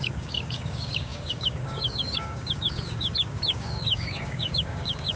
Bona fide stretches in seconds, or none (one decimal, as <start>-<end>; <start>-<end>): none